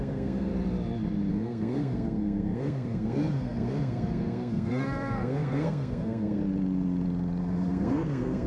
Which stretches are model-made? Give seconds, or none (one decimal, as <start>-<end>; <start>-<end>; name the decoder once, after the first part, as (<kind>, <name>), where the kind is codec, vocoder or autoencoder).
0.0-0.5 (codec, SNAC); 1.3-6.4; 7.4-8.5